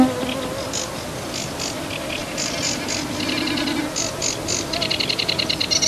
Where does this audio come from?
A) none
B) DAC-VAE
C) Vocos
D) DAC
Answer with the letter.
A